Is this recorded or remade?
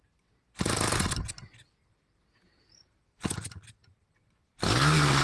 recorded